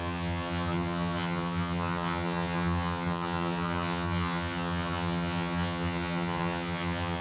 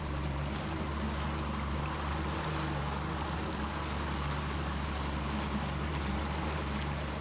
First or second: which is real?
second